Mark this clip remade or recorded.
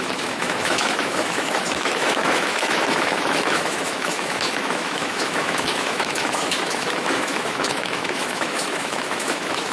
remade